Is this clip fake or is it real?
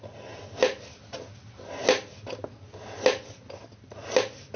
real